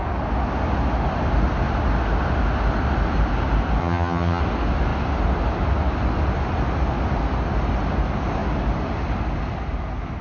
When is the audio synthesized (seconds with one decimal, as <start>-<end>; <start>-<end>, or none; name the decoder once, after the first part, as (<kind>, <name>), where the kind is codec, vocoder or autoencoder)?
3.8-4.4 (vocoder, HiFi-GAN)